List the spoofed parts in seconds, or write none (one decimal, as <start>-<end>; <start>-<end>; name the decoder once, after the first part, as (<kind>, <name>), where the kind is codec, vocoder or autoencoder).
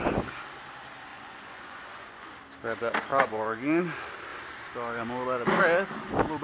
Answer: 1.1-2.3 (vocoder, Vocos); 3.1-3.8